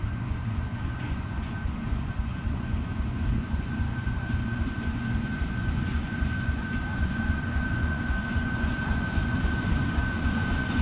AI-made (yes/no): yes